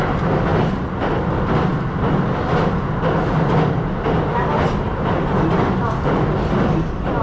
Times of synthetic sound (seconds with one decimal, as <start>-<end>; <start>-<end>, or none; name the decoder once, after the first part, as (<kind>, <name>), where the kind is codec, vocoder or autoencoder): none